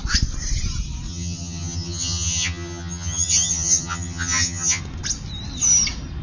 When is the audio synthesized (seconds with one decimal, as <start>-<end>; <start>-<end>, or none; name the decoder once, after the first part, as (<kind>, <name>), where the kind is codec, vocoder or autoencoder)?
1.1-4.8 (vocoder, HiFi-GAN)